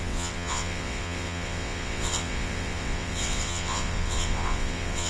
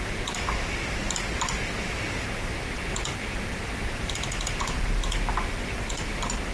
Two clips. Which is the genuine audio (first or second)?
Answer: second